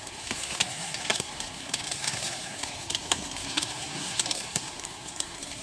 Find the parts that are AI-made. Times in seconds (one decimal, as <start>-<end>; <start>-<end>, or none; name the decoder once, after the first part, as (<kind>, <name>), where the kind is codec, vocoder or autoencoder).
0.0-5.6 (codec, SNAC)